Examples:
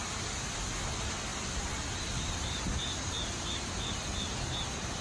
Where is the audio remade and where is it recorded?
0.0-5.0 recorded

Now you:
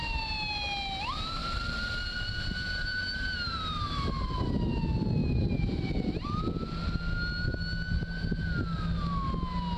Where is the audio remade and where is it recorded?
0.0-1.4 recorded; 1.4-4.8 remade; 4.8-5.2 recorded; 5.2-5.9 remade; 5.9-9.8 recorded

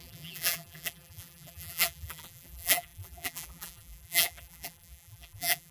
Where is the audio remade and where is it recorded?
0.0-5.7 remade

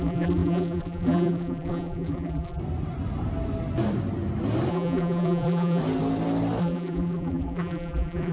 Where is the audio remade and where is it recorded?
0.0-2.6 remade; 2.6-4.7 recorded; 4.7-5.8 remade; 5.8-6.6 recorded; 6.6-8.3 remade

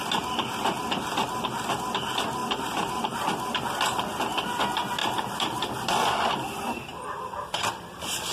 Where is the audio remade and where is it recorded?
0.0-2.4 recorded; 2.4-3.2 remade; 3.2-5.0 recorded; 5.0-5.9 remade; 5.9-6.9 recorded; 6.9-7.7 remade; 7.7-8.3 recorded